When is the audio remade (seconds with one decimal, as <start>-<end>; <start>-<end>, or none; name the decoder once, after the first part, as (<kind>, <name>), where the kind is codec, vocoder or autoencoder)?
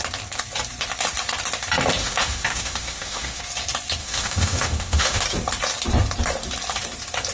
2.0-3.4 (autoencoder, DAC-VAE); 4.0-5.2